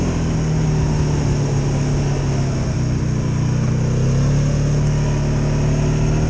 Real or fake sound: real